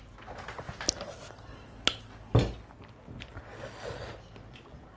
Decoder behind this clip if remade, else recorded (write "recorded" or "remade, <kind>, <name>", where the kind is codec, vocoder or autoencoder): recorded